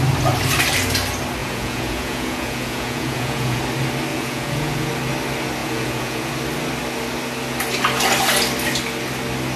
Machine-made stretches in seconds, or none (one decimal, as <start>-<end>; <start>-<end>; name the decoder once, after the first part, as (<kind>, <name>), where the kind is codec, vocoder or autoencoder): 1.4-3.6 (vocoder, Vocos); 4.1-4.9; 5.6-6.3